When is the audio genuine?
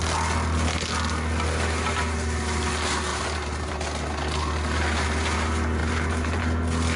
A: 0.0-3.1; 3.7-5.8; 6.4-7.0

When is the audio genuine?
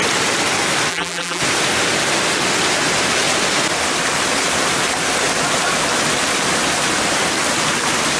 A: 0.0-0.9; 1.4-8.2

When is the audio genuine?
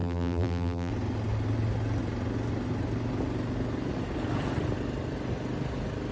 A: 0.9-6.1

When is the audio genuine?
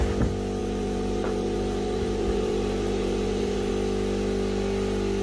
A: 0.0-0.6; 3.7-5.2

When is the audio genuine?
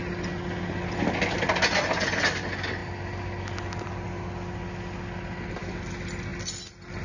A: 0.0-7.0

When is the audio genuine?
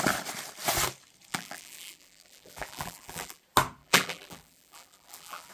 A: 0.0-1.3; 3.4-3.8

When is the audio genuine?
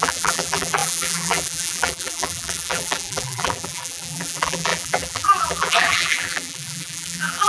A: none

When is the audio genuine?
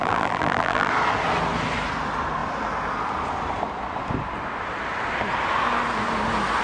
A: 0.9-6.6